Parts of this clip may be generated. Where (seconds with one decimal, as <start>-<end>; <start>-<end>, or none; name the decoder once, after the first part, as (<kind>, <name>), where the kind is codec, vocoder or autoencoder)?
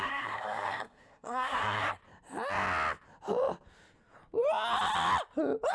0.0-2.0 (codec, SNAC)